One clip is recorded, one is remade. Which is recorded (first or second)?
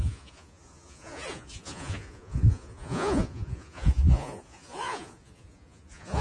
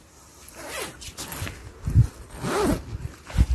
second